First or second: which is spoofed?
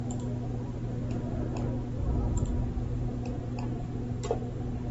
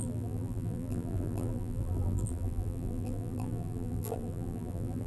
second